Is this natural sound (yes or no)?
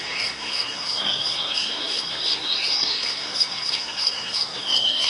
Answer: no